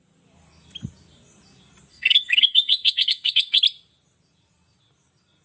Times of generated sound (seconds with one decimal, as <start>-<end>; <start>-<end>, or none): 1.9-3.6